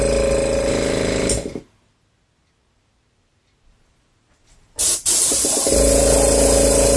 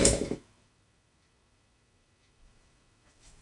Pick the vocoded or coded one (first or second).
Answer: second